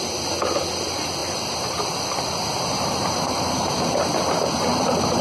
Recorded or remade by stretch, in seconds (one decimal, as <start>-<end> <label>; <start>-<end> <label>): 0.0-1.2 recorded; 1.2-3.7 remade; 3.7-5.2 recorded